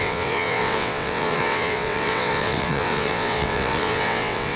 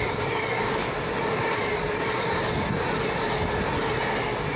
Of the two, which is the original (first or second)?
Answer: second